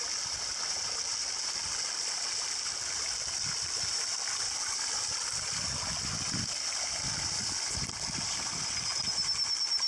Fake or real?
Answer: real